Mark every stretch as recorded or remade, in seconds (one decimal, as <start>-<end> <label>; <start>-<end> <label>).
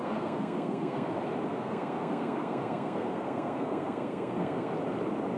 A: 0.0-1.1 remade; 1.1-1.5 recorded; 1.5-4.7 remade; 4.7-5.4 recorded